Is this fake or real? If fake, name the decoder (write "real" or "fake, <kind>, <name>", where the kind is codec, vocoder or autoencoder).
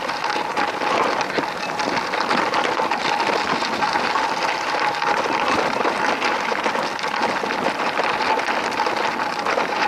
real